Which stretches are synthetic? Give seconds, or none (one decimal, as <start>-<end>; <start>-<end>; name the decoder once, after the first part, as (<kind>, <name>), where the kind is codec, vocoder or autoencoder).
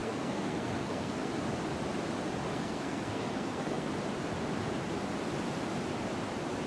0.0-1.3 (codec, SNAC); 2.5-3.9